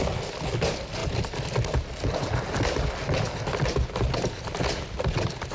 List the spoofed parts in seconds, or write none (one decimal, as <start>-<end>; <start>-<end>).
none